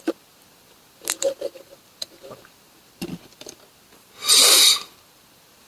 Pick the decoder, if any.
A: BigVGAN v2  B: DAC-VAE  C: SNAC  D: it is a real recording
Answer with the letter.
D